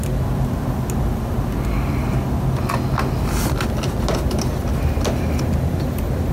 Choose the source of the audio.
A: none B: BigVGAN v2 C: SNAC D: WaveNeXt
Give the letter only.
A